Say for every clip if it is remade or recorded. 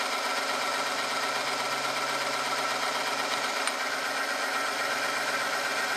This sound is recorded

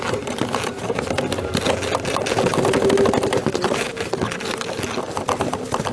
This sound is recorded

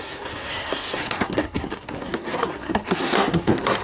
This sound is remade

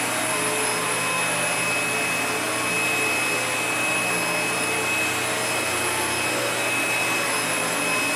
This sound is recorded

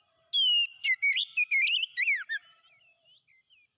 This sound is recorded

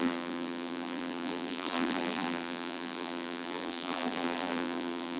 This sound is remade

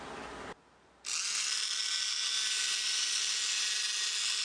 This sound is recorded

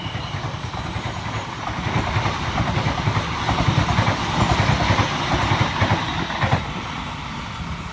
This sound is recorded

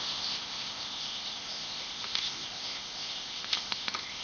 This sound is remade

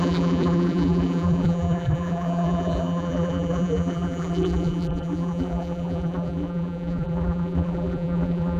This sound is remade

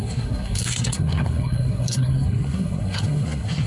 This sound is remade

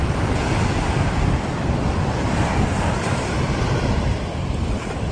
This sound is recorded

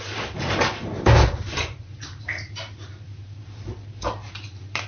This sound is remade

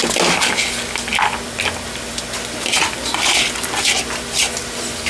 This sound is recorded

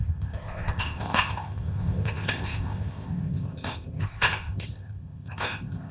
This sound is remade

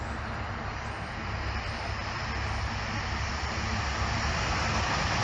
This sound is remade